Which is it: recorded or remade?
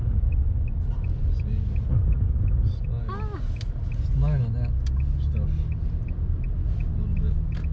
recorded